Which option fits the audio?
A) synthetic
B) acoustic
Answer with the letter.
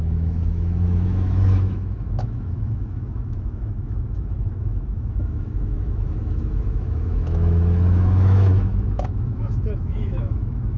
A